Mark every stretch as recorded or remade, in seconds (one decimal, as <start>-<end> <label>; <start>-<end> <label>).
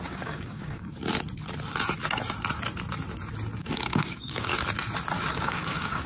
0.0-0.9 remade; 0.9-3.6 recorded; 3.6-4.5 remade; 4.5-5.3 recorded; 5.3-6.1 remade